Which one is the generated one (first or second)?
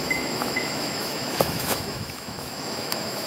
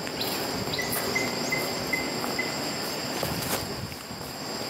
first